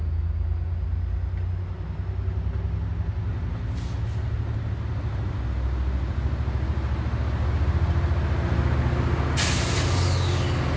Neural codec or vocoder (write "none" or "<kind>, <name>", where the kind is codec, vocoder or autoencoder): none